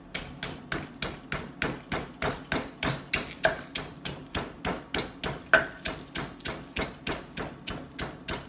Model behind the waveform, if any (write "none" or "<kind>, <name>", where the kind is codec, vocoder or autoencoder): none